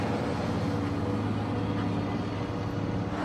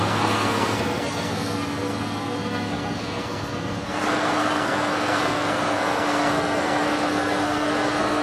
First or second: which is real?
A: first